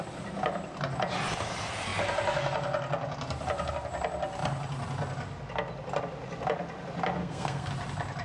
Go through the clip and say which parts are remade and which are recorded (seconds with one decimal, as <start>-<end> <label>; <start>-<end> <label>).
0.0-7.2 recorded; 7.2-7.7 remade; 7.7-8.2 recorded